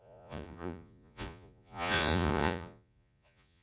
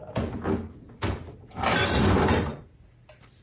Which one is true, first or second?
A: second